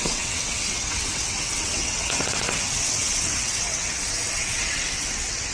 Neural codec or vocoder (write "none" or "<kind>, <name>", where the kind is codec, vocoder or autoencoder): vocoder, WaveNeXt